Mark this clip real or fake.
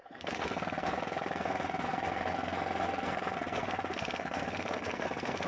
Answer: fake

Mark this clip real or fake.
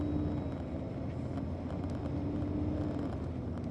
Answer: real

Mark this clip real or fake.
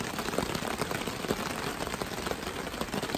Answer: real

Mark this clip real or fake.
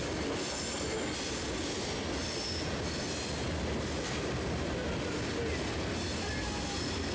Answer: real